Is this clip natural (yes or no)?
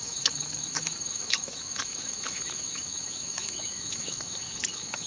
no